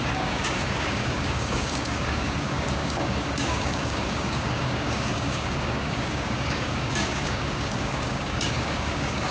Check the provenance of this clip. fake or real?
fake